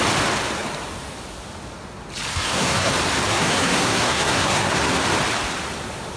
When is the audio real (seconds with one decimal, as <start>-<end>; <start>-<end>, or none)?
0.0-2.3; 2.9-3.3; 4.9-6.2